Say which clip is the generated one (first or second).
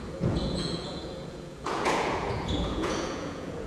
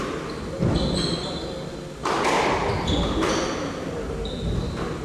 first